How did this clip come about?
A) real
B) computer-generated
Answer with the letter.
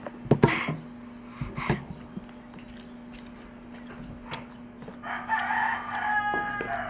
A